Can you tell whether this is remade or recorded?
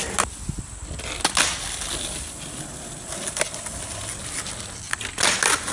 recorded